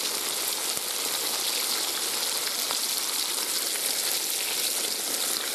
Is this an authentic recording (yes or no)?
yes